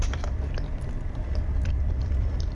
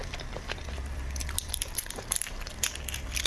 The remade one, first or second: first